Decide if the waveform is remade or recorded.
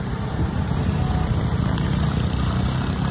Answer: remade